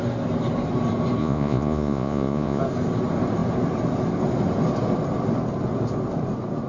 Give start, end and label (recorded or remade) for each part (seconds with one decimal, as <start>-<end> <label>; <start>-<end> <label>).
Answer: 0.0-1.2 recorded; 1.2-2.6 remade; 2.6-6.7 recorded